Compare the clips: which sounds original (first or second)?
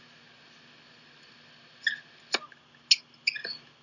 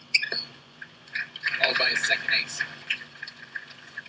first